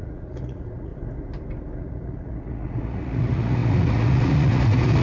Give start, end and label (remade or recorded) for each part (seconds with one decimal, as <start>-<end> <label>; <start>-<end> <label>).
0.0-0.9 remade; 0.9-1.8 recorded; 1.8-5.0 remade